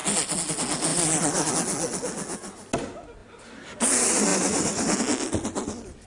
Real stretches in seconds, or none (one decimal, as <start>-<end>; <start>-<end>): 0.0-0.9; 1.5-4.3; 5.0-6.1